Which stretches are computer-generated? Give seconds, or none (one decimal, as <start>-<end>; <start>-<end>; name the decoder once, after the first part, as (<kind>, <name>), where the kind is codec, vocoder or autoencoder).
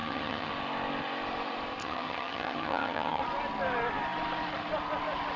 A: 0.0-0.5 (vocoder, HiFi-GAN); 1.8-3.2